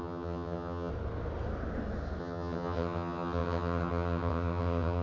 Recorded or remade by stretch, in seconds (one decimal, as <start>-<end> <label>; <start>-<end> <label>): 0.0-0.9 remade; 0.9-2.2 recorded; 2.2-5.0 remade